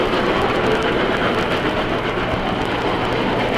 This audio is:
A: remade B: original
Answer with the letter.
B